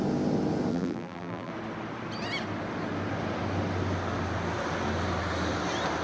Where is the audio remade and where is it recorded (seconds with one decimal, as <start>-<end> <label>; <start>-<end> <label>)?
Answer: 0.0-0.7 recorded; 0.7-1.5 remade; 1.5-6.0 recorded